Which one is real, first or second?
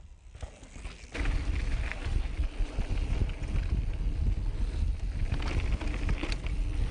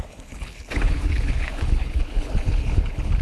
first